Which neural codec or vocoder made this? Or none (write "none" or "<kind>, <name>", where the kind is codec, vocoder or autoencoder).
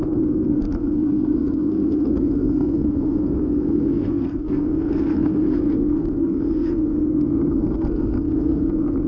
codec, SNAC